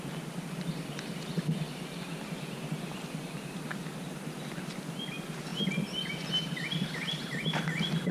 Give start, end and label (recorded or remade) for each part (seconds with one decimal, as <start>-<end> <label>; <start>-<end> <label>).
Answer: 0.0-8.1 recorded